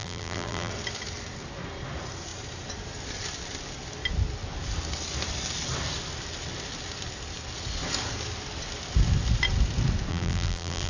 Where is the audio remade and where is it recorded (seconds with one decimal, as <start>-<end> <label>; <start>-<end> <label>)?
0.0-0.7 remade; 0.7-10.1 recorded; 10.1-10.9 remade

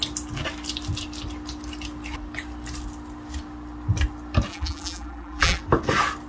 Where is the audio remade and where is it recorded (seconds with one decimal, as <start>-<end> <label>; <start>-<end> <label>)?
0.0-4.5 recorded; 4.5-5.6 remade; 5.6-6.3 recorded

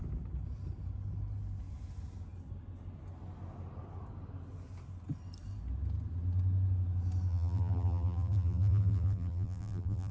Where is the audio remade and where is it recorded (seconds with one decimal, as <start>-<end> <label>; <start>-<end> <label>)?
0.0-7.3 recorded; 7.3-10.1 remade

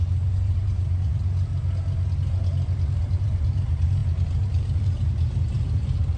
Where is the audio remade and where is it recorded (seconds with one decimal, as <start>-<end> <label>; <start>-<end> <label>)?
0.0-1.5 remade; 1.5-3.0 recorded; 3.0-6.2 remade

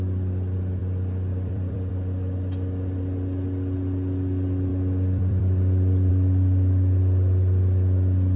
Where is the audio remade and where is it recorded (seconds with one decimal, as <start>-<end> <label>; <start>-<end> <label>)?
0.0-0.8 recorded; 0.8-1.9 remade; 1.9-4.7 recorded; 4.7-6.1 remade; 6.1-8.4 recorded

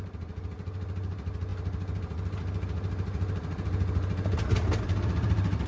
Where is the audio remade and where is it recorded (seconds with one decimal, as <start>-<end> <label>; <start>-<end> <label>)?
0.0-1.5 remade; 1.5-4.8 recorded; 4.8-5.7 remade

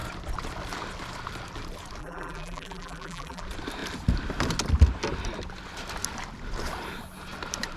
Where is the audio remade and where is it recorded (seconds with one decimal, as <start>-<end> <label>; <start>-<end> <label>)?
0.0-2.0 recorded; 2.0-3.4 remade; 3.4-7.8 recorded